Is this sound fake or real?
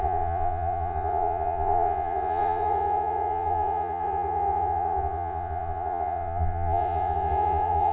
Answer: fake